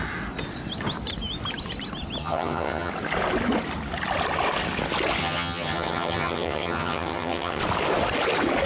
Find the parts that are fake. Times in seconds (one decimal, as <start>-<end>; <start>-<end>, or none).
2.2-2.9; 5.2-7.6